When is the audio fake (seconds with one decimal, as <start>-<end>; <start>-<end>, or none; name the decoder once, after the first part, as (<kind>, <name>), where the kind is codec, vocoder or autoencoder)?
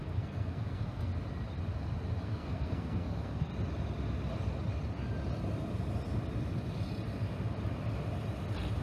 0.0-1.1 (codec, SNAC); 2.2-3.5